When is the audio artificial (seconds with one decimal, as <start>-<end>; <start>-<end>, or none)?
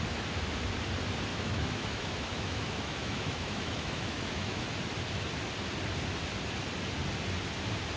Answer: 1.3-4.7